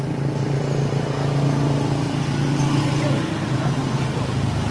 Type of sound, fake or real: real